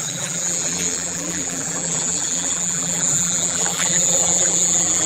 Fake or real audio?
fake